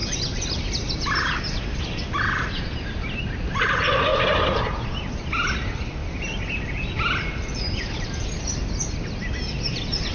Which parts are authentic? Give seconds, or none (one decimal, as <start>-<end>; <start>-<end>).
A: 0.0-10.1